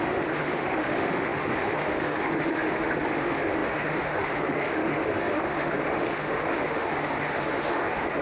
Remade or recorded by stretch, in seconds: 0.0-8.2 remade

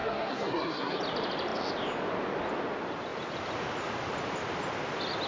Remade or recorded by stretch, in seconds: 0.0-1.0 remade; 1.0-5.3 recorded

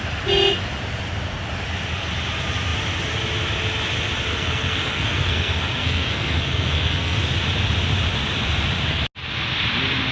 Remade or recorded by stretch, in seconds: 0.0-4.3 recorded; 4.3-7.2 remade; 7.2-10.1 recorded

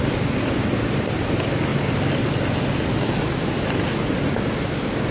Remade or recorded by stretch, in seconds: 0.0-5.1 recorded